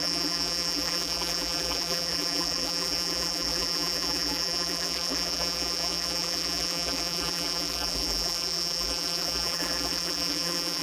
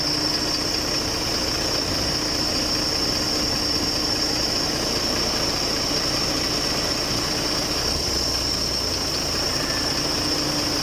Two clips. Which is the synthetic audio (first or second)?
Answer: first